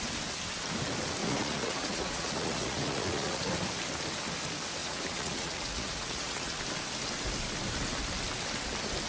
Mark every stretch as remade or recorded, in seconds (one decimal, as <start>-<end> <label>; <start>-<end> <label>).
0.0-1.2 recorded; 1.2-3.5 remade; 3.5-4.8 recorded; 4.8-6.6 remade; 6.6-9.1 recorded

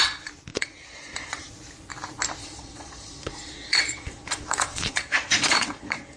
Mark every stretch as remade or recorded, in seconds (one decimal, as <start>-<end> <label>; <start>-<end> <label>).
0.0-0.5 recorded; 0.5-1.5 remade; 1.5-2.4 recorded; 2.4-6.2 remade

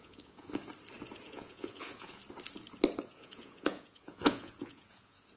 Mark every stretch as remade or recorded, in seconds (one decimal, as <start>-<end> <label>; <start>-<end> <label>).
0.0-0.6 remade; 0.6-1.3 recorded; 1.3-2.2 remade; 2.2-3.1 recorded; 3.1-5.4 remade

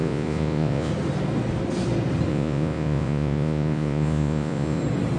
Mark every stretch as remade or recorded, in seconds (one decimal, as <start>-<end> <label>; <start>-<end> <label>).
0.0-0.9 remade; 0.9-2.3 recorded; 2.3-4.8 remade; 4.8-5.2 recorded

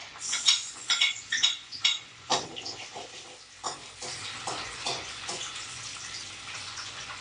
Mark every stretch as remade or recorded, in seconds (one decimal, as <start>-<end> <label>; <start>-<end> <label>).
0.0-2.3 remade; 2.3-4.5 recorded; 4.5-5.9 remade; 5.9-6.6 recorded; 6.6-7.2 remade

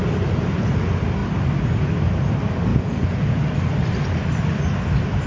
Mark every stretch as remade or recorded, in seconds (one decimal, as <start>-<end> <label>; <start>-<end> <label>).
0.0-2.7 recorded; 2.7-3.4 remade; 3.4-5.3 recorded